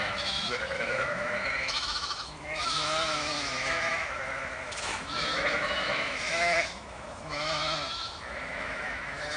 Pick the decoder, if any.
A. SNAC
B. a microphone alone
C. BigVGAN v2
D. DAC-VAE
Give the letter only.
D